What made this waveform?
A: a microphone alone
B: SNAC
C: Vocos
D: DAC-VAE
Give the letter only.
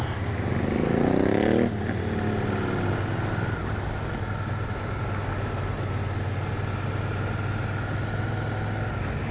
A